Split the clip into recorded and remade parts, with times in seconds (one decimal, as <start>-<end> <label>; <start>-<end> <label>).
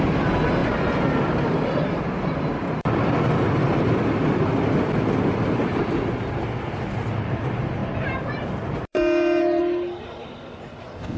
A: 0.0-7.8 recorded; 7.8-9.6 remade; 9.6-11.2 recorded